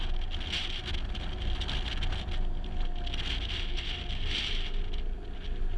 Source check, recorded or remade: recorded